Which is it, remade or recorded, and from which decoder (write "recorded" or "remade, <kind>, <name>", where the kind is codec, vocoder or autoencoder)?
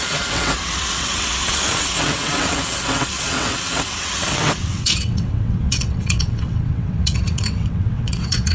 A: remade, vocoder, WaveNeXt